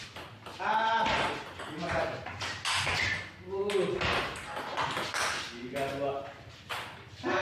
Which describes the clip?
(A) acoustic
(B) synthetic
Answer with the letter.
A